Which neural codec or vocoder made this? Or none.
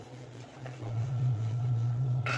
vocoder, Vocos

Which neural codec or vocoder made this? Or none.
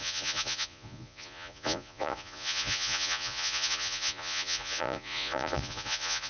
vocoder, Vocos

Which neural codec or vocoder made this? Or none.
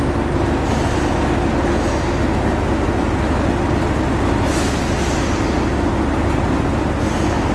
none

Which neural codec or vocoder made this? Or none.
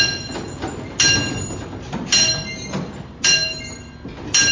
none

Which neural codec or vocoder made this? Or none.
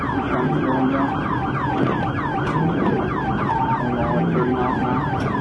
none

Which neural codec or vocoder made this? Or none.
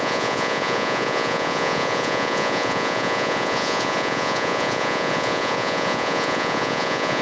vocoder, Vocos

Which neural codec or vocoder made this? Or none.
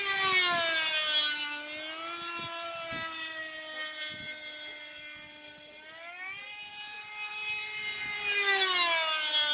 none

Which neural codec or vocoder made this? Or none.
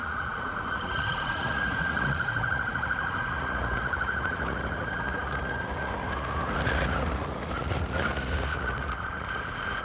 vocoder, Vocos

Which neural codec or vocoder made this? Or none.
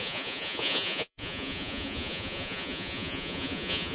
vocoder, Vocos